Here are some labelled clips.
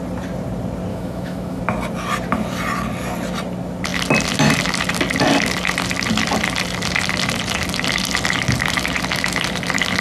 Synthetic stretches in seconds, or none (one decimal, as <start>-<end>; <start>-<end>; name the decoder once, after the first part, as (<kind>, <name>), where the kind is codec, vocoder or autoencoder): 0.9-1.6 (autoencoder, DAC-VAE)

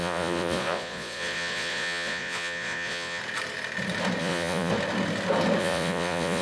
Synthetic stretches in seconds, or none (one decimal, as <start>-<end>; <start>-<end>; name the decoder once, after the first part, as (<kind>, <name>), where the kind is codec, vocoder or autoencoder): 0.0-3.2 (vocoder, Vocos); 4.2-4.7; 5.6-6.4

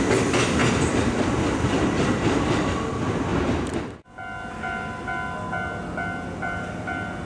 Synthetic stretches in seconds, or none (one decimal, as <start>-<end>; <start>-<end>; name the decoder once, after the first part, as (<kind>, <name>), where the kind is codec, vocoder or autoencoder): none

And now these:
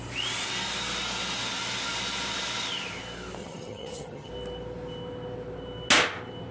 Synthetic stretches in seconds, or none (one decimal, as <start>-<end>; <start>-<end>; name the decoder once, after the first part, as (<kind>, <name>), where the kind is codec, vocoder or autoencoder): 3.4-4.3 (vocoder, HiFi-GAN)